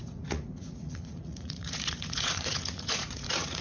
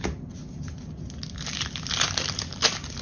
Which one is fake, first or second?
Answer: first